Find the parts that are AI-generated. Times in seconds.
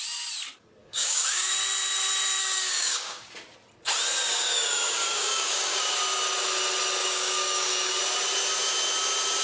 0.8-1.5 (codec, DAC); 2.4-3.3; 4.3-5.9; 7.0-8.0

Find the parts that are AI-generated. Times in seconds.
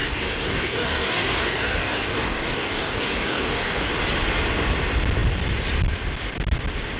0.0-3.9 (codec, DAC)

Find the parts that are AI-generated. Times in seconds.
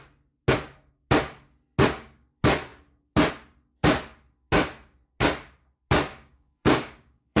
6.1-7.4 (codec, DAC)